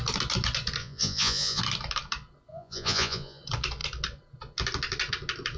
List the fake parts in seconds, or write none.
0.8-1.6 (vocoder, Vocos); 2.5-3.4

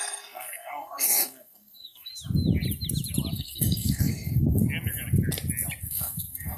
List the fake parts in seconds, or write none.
0.0-2.1 (codec, SNAC); 3.3-4.6; 5.8-6.6

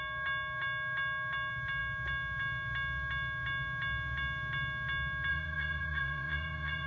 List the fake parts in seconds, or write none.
5.3-6.9 (vocoder, Vocos)

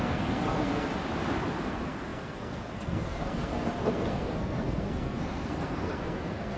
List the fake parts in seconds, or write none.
0.0-0.9 (codec, SNAC); 1.6-6.6

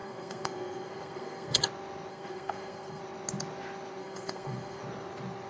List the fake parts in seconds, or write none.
0.0-1.6 (codec, SNAC); 2.1-3.0; 4.0-4.8

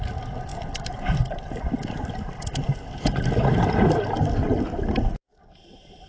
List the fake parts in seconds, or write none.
none

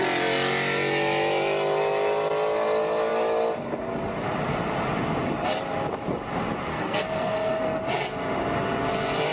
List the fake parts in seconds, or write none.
6.7-7.8 (codec, SNAC)

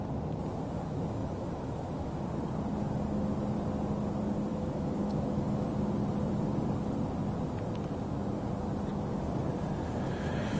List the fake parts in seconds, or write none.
1.2-2.2 (autoencoder, DAC-VAE); 4.5-5.7; 8.9-9.4